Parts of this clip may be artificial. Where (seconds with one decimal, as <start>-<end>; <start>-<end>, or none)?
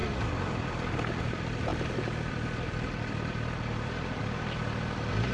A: 0.0-1.2; 1.7-4.2